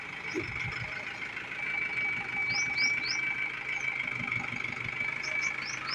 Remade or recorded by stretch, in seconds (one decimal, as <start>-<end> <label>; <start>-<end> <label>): 0.0-2.4 recorded; 2.4-3.0 remade; 3.0-5.9 recorded